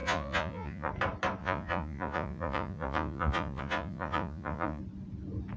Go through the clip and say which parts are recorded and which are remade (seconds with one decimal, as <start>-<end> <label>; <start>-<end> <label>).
0.0-0.9 remade; 0.9-1.4 recorded; 1.4-4.8 remade; 4.8-5.6 recorded